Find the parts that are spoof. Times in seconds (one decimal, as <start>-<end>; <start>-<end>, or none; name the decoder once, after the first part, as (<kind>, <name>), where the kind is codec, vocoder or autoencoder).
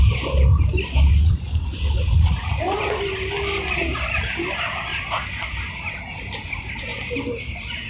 1.1-3.0 (vocoder, Vocos)